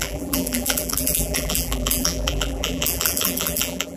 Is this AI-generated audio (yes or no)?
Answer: yes